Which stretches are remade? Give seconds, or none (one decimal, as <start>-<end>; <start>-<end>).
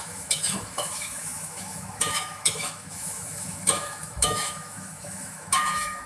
0.0-6.1